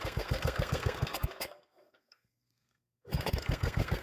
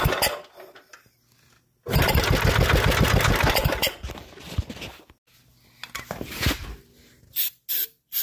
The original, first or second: second